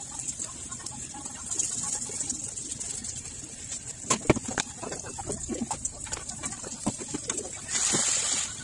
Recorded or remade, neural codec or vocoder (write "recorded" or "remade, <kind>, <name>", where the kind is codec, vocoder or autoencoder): recorded